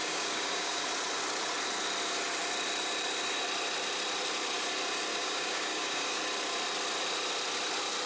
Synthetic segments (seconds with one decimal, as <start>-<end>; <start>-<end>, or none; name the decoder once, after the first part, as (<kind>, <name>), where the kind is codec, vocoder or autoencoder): 0.0-0.8 (codec, DAC); 5.1-6.2